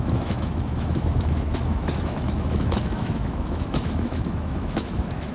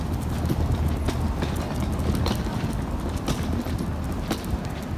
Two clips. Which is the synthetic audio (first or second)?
first